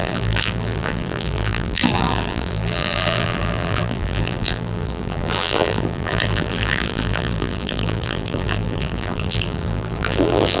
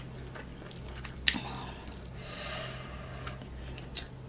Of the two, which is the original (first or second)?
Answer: second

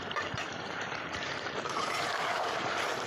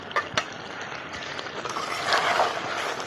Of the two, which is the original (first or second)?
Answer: second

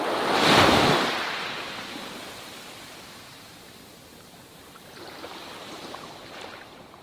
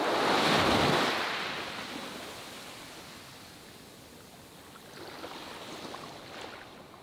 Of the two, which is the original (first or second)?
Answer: second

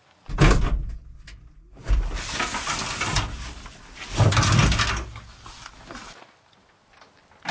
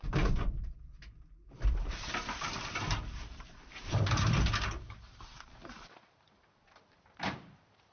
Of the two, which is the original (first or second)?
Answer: first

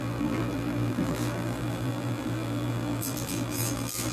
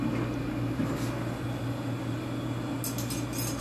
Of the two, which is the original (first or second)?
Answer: second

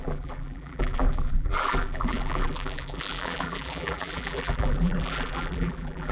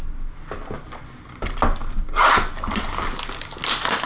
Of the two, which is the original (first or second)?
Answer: second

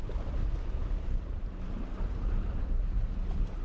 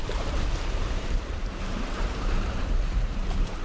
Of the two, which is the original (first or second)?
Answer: first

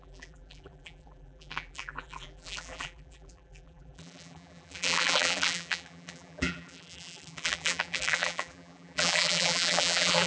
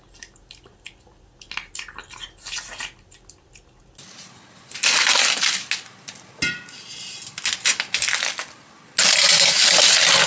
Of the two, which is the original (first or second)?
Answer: second